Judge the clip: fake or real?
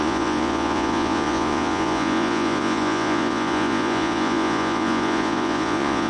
fake